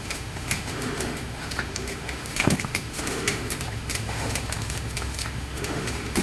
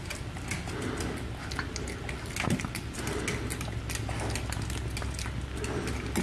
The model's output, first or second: first